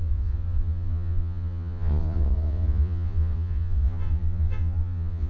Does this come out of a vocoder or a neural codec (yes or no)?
yes